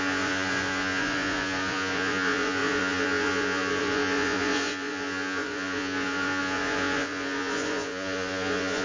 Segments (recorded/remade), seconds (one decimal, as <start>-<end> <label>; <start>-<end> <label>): 0.0-8.8 remade